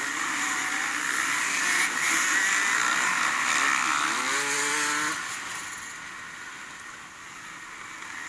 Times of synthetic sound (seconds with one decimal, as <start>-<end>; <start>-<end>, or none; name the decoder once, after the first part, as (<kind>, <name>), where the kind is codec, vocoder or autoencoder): 0.6-2.3 (vocoder, BigVGAN v2); 5.5-6.1